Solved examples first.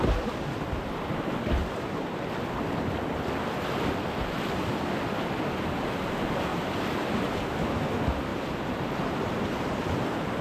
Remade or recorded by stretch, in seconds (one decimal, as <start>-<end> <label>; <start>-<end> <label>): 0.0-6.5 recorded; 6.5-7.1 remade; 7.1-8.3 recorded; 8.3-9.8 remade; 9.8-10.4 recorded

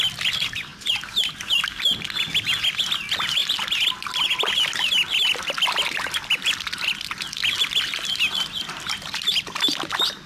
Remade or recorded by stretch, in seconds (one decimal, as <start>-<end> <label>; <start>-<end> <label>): 0.0-10.3 recorded

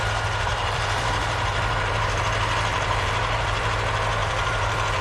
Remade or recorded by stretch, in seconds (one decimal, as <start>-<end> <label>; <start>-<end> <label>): 0.0-0.5 recorded; 0.5-2.2 remade; 2.2-2.7 recorded; 2.7-3.8 remade; 3.8-4.2 recorded; 4.2-5.0 remade